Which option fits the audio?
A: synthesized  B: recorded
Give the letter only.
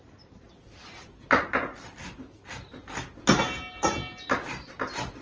B